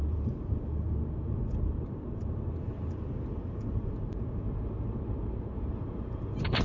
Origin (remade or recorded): remade